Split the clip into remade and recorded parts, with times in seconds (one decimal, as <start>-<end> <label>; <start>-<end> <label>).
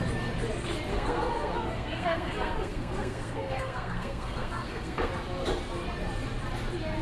0.0-0.9 recorded; 0.9-5.1 remade; 5.1-7.0 recorded